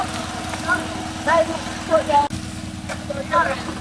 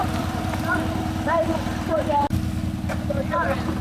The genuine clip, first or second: first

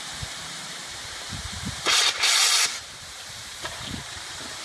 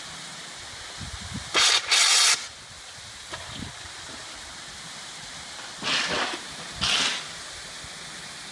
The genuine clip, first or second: second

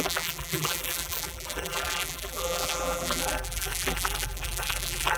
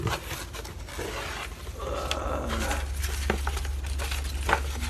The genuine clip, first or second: second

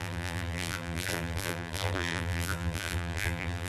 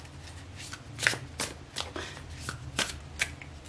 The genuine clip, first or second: second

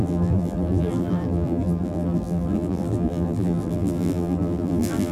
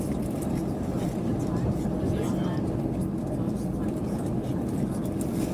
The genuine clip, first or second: second